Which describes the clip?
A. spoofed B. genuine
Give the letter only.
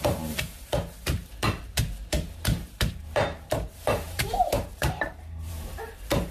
A